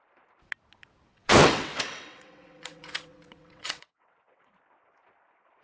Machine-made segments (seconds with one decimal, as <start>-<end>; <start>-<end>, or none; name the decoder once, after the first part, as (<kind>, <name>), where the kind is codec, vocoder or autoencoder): 1.1-4.5 (vocoder, WaveNeXt)